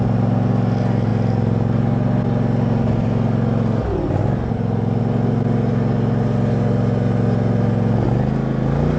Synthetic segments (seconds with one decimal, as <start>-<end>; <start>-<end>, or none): none